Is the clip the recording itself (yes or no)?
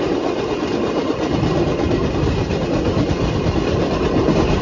yes